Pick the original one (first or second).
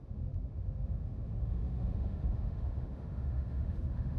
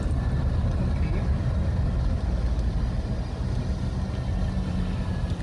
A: second